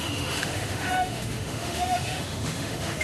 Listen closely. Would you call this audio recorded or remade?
remade